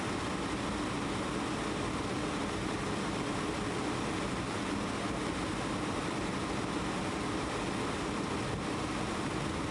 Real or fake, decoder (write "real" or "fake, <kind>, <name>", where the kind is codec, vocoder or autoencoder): real